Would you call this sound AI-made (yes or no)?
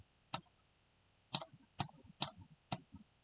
no